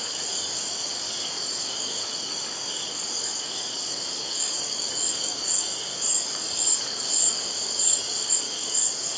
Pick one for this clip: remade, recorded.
remade